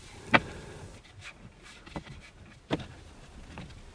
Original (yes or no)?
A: yes